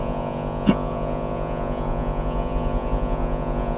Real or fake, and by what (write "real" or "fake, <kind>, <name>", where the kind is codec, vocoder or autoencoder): fake, vocoder, Vocos